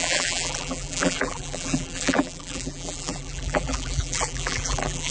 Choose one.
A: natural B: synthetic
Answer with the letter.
B